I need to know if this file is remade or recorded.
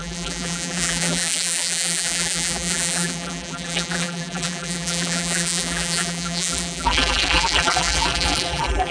remade